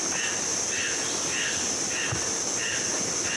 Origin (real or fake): real